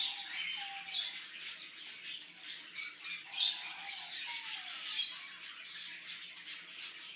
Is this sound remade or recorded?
recorded